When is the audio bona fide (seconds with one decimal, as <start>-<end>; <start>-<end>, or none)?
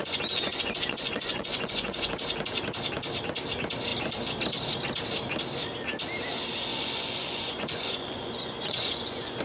2.1-6.7